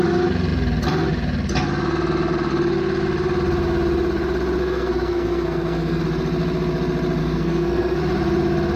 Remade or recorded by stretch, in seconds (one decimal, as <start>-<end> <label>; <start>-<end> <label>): 0.0-4.6 recorded; 4.6-6.0 remade; 6.0-7.2 recorded; 7.2-8.0 remade; 8.0-8.8 recorded